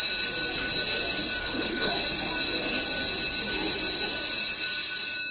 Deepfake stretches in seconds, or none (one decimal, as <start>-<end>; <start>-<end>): 1.4-1.9